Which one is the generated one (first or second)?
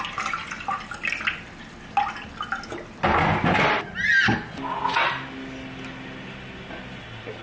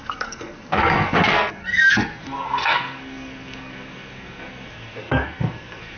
second